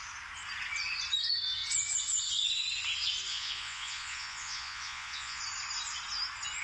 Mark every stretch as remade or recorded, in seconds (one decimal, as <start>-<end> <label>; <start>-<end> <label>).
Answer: 0.0-3.3 recorded; 3.3-5.4 remade; 5.4-6.6 recorded

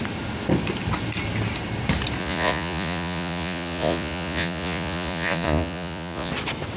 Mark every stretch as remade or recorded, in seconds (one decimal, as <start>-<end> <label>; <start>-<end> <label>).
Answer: 0.0-2.2 recorded; 2.2-6.3 remade; 6.3-6.8 recorded